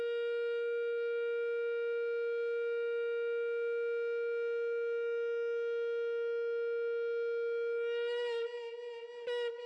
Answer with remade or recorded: recorded